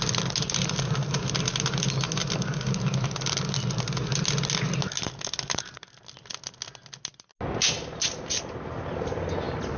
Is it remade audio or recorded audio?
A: recorded